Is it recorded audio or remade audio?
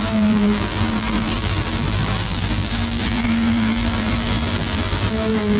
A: remade